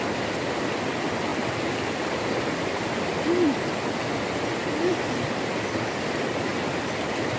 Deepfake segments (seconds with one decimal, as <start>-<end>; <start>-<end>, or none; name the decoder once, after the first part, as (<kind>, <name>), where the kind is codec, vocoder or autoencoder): none